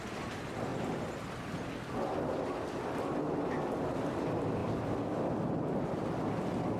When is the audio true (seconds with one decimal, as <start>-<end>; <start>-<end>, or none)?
0.0-6.8